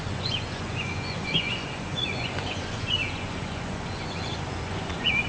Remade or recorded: remade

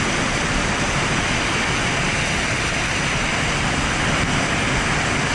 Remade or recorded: recorded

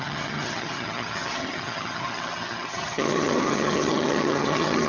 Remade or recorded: remade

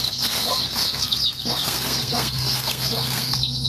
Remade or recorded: remade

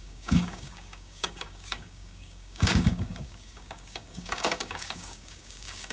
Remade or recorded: remade